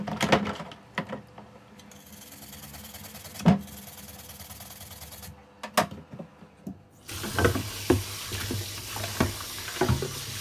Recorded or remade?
recorded